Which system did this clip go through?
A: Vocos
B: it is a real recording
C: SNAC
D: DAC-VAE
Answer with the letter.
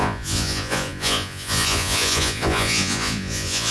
A